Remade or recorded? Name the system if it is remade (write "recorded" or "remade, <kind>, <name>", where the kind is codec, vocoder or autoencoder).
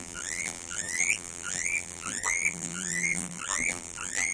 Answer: remade, vocoder, BigVGAN v2